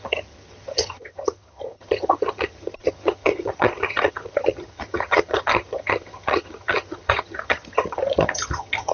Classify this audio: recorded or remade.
remade